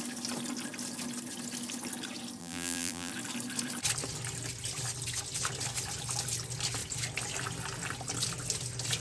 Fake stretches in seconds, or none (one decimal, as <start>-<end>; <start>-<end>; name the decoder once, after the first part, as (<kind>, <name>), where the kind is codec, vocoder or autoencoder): 2.4-3.1 (vocoder, BigVGAN v2)